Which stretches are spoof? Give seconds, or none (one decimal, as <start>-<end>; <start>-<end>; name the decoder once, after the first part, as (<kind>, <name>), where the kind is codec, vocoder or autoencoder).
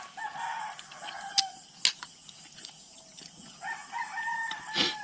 2.2-3.2 (vocoder, BigVGAN v2)